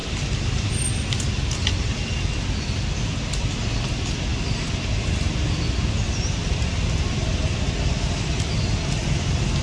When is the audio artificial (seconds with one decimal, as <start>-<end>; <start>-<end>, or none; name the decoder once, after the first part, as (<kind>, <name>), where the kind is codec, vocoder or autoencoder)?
none